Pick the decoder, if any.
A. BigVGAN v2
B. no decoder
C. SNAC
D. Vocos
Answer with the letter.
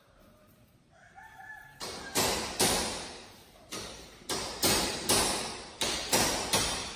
A